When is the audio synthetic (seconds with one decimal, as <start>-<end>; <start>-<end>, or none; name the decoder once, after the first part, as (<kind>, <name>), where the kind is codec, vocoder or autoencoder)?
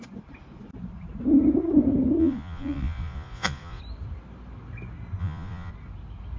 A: 2.2-3.8 (vocoder, Vocos); 5.2-5.7